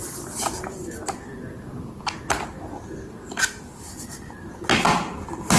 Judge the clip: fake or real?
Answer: real